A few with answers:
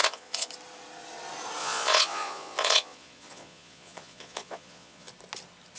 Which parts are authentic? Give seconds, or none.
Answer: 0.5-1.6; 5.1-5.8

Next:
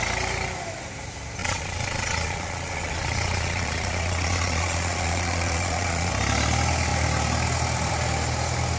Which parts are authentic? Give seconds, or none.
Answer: 0.0-1.4; 6.1-8.8

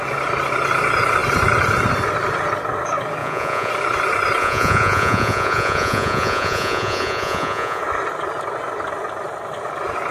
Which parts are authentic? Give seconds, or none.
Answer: 0.0-3.2; 3.7-4.4; 7.8-10.1

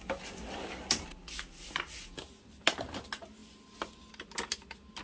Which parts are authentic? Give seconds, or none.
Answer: 0.0-5.0